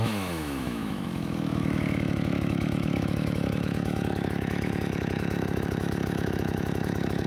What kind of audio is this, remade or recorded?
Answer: remade